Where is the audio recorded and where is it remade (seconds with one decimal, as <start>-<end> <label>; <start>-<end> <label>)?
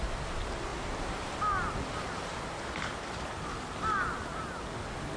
0.0-5.2 recorded